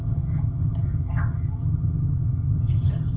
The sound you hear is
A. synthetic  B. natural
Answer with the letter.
A